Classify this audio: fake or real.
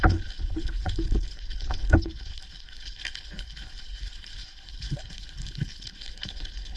fake